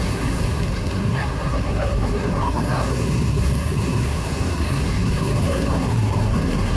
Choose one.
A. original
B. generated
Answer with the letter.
B